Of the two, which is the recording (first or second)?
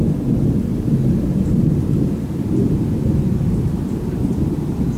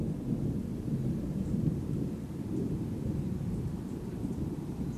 first